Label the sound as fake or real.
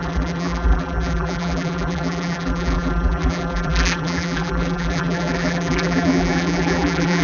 fake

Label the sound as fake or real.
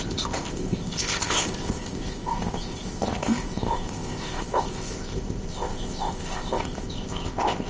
fake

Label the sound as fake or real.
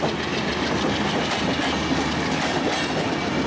real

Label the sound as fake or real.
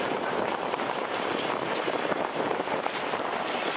fake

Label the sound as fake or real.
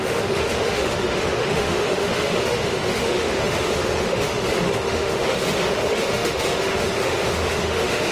fake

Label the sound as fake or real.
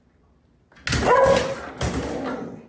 real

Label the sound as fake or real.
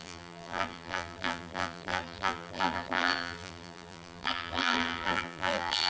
fake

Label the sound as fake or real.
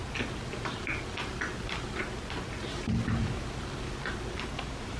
real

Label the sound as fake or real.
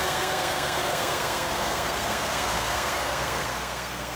fake